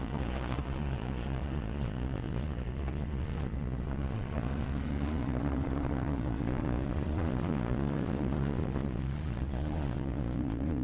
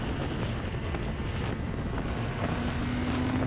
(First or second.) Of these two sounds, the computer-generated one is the first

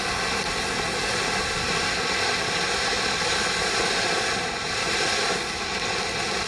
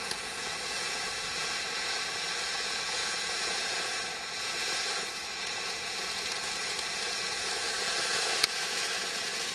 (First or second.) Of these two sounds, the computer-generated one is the second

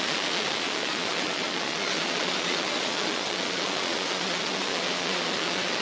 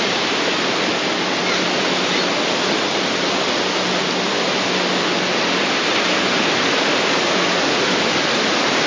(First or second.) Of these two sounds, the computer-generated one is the first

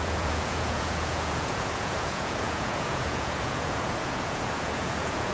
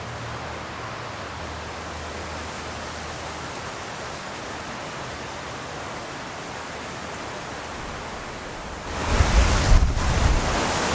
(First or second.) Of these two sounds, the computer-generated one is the first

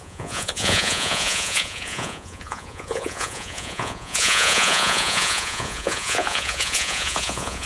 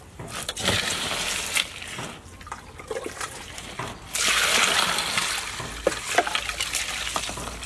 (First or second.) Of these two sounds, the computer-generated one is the first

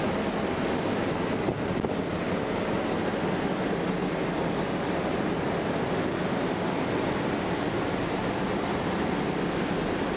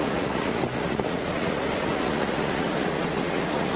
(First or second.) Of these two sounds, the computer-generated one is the second